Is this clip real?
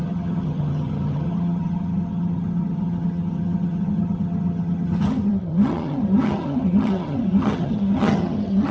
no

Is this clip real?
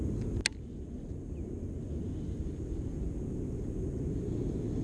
yes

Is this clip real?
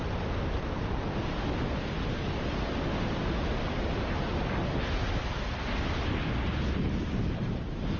yes